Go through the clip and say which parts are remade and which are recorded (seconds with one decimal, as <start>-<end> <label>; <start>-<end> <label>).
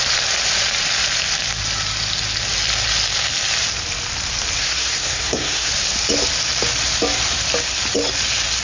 0.0-4.6 recorded; 4.6-5.7 remade; 5.7-8.6 recorded